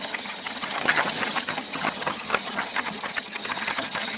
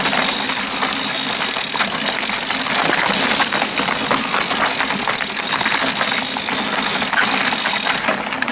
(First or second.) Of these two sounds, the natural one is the second